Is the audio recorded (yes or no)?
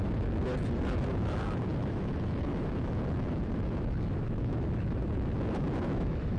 no